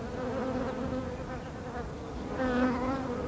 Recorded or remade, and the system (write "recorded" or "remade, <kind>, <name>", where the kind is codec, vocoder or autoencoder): recorded